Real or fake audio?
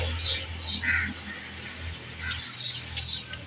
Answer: real